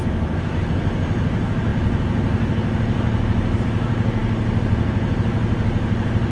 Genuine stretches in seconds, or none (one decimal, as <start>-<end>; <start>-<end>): 0.0-6.3